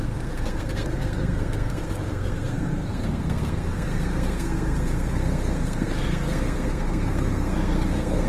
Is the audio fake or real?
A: fake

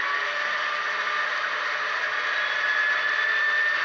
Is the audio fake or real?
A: real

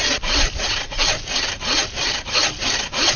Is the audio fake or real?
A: real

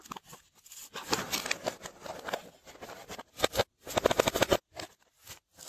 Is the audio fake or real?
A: real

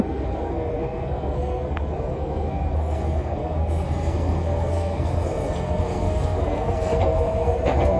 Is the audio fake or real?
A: fake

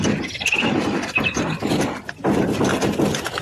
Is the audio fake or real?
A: real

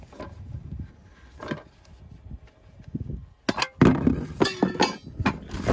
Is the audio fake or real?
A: real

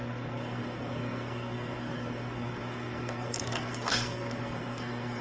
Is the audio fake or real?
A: fake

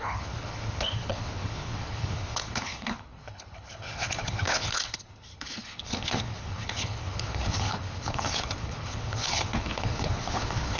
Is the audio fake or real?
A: fake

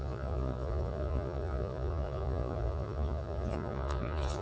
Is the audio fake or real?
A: fake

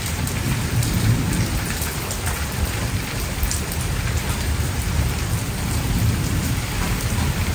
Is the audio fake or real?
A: fake